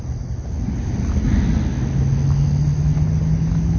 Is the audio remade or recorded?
recorded